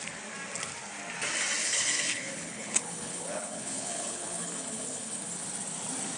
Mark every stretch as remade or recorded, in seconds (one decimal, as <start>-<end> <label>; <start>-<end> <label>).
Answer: 0.0-1.6 recorded; 1.6-5.3 remade; 5.3-6.2 recorded